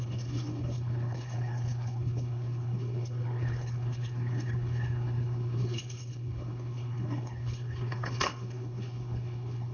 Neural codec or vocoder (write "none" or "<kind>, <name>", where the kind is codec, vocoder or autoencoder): codec, HILCodec